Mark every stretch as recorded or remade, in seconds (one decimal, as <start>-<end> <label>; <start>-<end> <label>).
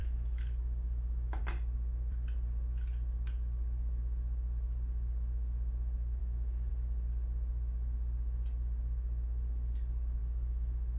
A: 0.0-1.4 remade; 1.4-6.2 recorded; 6.2-6.7 remade; 6.7-10.2 recorded; 10.2-11.0 remade